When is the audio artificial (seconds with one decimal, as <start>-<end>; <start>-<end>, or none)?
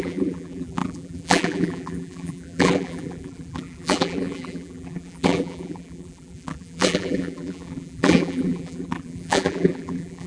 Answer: 0.0-10.3